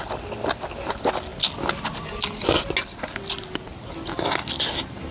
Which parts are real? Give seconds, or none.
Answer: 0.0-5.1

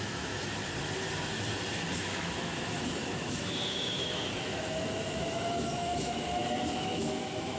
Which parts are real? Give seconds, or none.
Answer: 0.6-2.0

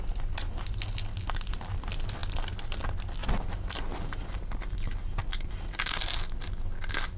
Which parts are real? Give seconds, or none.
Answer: 0.0-7.2

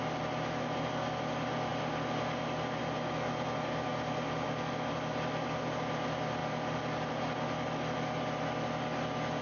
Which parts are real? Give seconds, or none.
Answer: 0.0-9.4

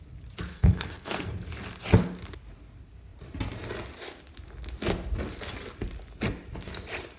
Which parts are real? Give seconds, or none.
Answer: 0.0-0.5; 1.3-7.2

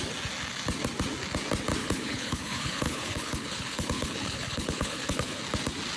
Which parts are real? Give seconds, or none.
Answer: 0.0-1.8; 5.4-6.0